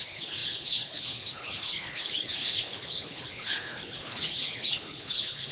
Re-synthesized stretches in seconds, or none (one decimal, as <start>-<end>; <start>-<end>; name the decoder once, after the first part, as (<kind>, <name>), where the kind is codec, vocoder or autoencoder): 0.0-5.5 (codec, HILCodec)